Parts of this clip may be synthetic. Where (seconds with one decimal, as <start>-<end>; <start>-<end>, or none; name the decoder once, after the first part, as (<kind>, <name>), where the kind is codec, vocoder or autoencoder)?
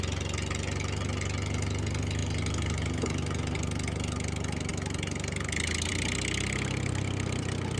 2.2-3.4 (vocoder, BigVGAN v2)